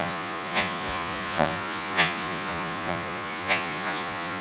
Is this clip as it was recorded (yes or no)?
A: no